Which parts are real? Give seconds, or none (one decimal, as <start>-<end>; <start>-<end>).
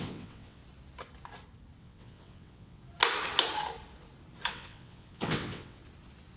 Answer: 0.6-1.8; 2.8-4.5; 5.8-6.4